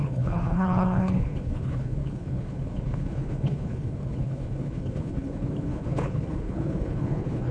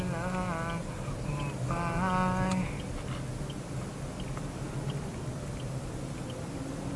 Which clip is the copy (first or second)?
first